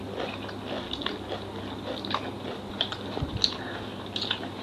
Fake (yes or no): no